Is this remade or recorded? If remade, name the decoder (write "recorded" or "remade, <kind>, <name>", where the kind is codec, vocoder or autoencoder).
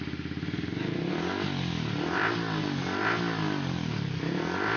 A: recorded